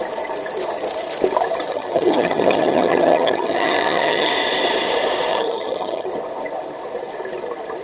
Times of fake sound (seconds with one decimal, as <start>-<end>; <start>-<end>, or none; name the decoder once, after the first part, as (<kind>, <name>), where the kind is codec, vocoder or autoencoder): 1.7-4.3 (vocoder, HiFi-GAN); 5.3-6.1